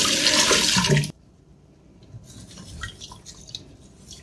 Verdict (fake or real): real